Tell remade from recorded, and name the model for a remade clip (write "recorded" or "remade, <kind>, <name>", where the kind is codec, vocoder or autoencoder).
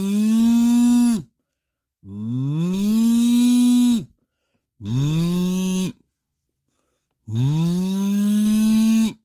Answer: remade, autoencoder, DAC-VAE